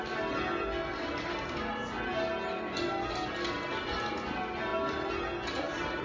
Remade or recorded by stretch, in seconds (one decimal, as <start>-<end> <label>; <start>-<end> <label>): 0.0-6.0 recorded